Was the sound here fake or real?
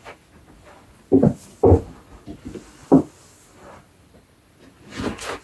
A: real